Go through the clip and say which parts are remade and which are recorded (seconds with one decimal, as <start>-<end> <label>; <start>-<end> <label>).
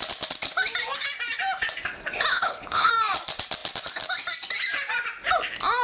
0.0-2.3 recorded; 2.3-2.9 remade; 2.9-5.8 recorded